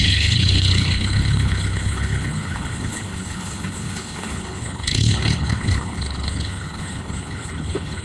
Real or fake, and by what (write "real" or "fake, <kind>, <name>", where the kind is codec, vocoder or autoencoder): fake, codec, HILCodec